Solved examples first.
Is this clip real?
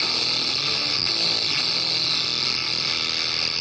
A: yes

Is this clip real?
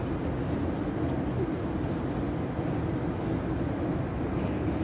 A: yes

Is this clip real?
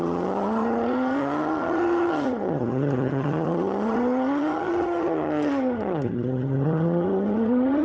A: no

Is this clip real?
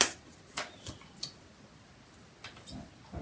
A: yes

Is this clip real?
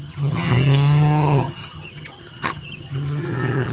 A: no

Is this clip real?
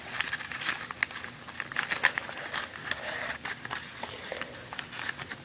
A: yes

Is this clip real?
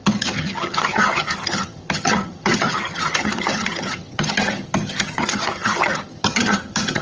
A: no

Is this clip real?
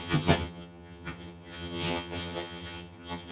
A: no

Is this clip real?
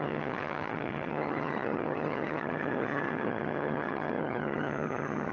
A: no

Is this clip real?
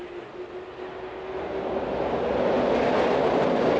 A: yes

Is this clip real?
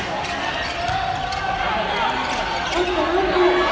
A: yes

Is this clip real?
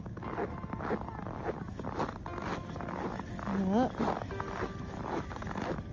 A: yes